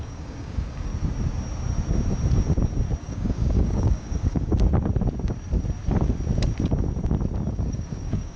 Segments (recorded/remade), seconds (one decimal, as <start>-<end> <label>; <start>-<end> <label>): 0.0-0.9 remade; 0.9-3.0 recorded; 3.0-4.5 remade; 4.5-7.5 recorded; 7.5-8.4 remade